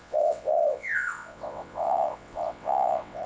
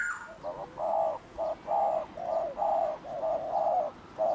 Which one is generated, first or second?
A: first